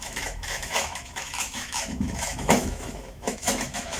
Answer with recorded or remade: remade